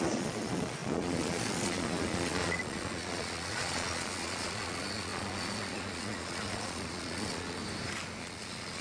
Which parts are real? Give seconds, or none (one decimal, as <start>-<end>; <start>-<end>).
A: 7.6-8.2